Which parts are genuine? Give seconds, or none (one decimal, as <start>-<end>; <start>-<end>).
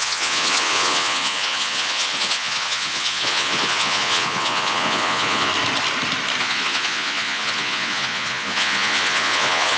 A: 5.5-6.4